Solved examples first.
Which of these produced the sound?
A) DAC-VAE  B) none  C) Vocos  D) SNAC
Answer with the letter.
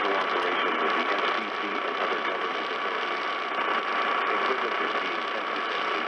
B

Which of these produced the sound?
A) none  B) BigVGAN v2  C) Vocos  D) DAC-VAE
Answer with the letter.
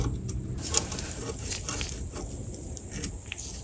A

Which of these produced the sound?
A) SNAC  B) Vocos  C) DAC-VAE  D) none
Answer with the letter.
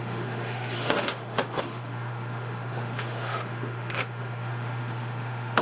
C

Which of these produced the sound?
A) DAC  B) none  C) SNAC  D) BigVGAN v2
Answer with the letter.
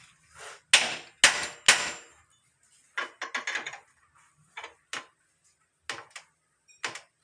B